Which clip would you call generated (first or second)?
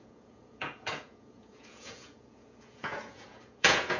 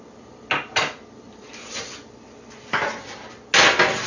first